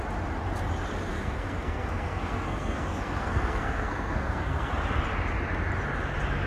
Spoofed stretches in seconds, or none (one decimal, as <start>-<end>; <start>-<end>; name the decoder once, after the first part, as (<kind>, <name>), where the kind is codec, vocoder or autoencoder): 1.1-4.7 (codec, SNAC)